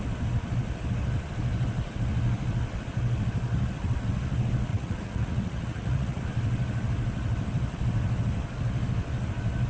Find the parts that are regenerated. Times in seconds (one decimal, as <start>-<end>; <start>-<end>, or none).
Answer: 4.7-6.2

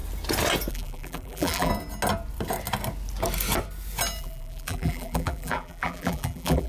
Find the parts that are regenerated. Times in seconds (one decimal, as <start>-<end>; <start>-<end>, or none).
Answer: 0.7-1.7; 4.2-6.7

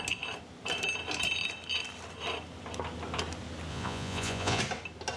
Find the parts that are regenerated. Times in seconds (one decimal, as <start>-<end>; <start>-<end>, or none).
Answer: 3.7-4.6

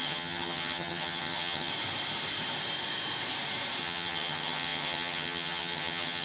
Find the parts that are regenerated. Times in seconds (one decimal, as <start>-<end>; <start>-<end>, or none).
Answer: 0.0-1.7; 3.8-6.2

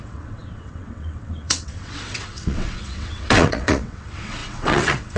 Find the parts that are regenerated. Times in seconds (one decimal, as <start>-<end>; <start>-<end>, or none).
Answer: 0.0-5.2

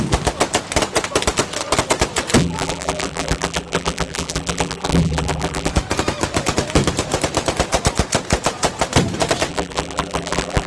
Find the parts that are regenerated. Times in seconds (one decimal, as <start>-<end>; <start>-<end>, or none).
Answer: 2.4-5.7; 9.5-10.7

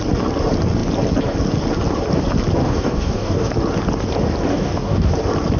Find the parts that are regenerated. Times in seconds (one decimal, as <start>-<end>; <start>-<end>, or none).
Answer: 2.6-3.5; 4.5-5.1

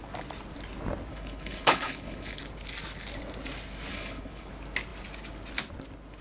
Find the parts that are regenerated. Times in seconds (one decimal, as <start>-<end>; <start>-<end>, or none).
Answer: 1.1-2.4; 3.9-4.5